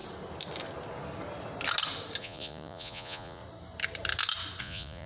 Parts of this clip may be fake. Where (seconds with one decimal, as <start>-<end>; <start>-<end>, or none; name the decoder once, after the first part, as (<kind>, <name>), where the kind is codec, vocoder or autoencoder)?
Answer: 2.2-3.4 (vocoder, Vocos); 4.6-5.1